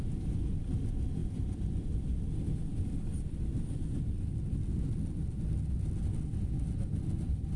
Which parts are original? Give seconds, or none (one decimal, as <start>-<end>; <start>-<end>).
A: 0.0-7.6